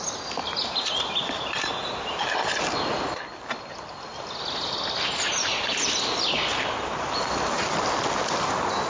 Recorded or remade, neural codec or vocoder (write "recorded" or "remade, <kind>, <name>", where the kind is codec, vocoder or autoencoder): recorded